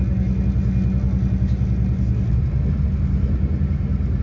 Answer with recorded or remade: recorded